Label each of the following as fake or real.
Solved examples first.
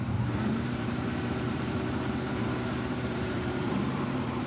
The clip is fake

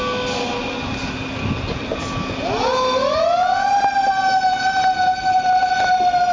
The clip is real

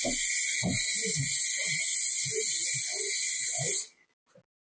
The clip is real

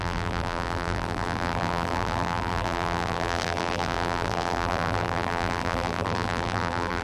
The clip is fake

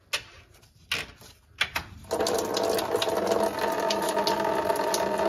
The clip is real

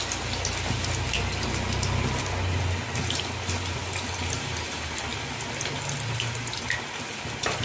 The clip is real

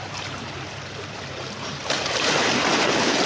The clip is fake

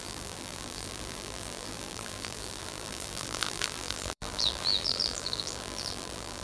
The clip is fake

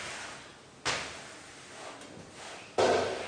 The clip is real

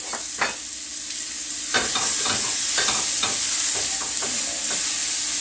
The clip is real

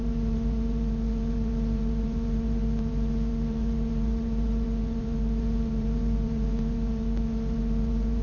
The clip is fake